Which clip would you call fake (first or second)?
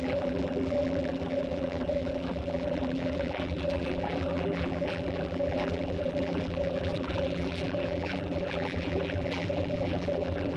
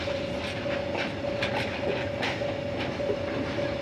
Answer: first